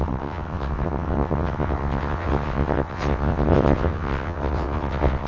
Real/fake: fake